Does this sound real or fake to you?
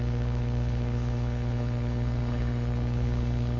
fake